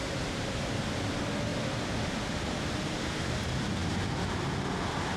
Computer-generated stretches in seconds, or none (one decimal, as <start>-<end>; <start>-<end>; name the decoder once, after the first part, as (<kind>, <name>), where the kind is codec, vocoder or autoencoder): 0.0-0.9 (vocoder, BigVGAN v2)

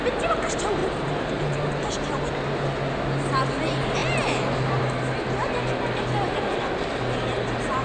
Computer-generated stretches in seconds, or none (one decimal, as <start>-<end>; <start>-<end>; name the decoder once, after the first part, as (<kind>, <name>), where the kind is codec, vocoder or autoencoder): 0.8-2.3 (vocoder, BigVGAN v2); 4.0-4.8

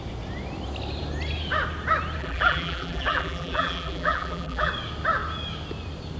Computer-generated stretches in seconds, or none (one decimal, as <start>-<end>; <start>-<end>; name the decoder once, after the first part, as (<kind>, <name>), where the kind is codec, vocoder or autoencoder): 2.2-4.7 (vocoder, BigVGAN v2)